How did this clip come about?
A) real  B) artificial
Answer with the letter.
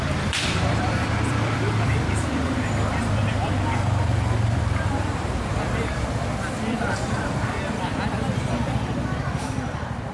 B